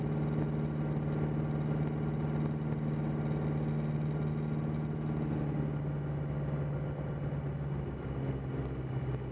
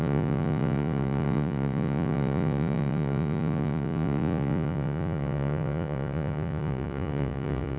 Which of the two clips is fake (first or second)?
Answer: second